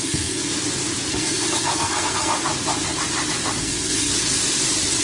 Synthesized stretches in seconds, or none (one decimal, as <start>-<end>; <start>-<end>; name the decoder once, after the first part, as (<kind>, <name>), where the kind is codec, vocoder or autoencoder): 0.0-0.5 (codec, SNAC); 1.1-2.3; 3.6-4.1